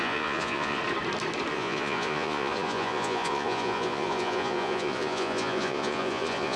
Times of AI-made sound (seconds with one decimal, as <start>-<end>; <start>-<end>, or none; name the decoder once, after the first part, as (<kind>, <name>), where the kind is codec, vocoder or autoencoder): 0.0-0.8 (vocoder, Vocos); 1.5-6.6